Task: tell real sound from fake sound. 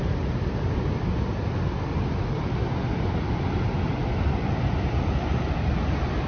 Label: real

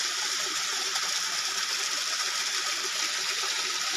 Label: real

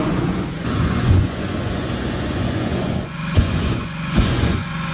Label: fake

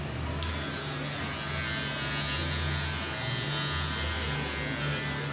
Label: real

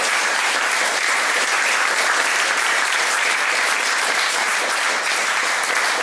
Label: fake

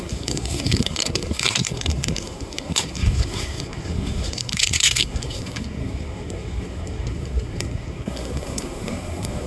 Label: fake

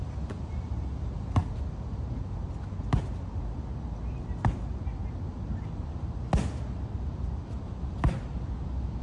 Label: real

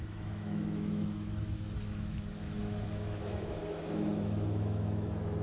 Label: fake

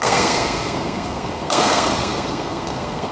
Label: fake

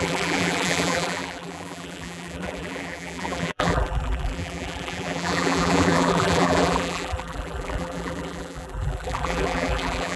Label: fake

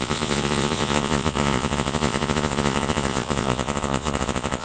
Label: fake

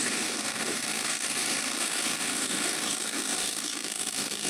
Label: fake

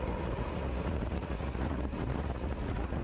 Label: fake